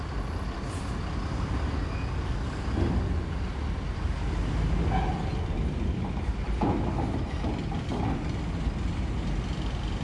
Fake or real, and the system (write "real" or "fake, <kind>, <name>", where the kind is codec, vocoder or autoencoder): real